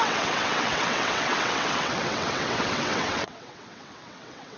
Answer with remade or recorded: remade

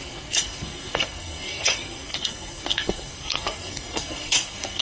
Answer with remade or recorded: remade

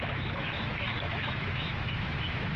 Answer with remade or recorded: remade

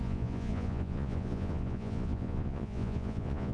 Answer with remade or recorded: remade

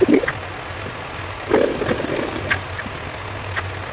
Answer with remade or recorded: recorded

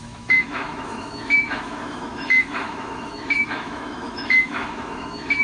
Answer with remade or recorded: remade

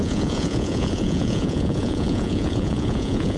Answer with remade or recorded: remade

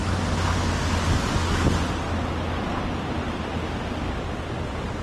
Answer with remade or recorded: recorded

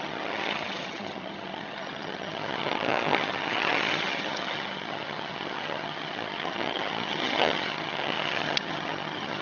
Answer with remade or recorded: remade